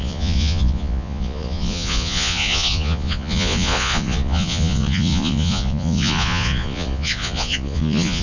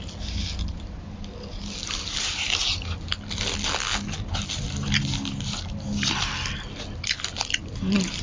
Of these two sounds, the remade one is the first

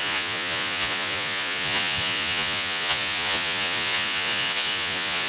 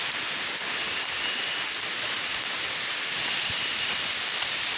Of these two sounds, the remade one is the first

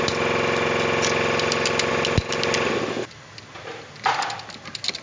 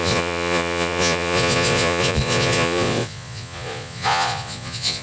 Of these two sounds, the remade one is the second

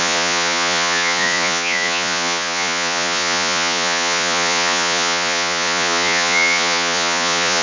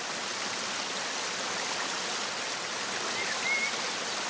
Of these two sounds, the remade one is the first